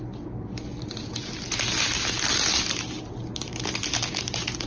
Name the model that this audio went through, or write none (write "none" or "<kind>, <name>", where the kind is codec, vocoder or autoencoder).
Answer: none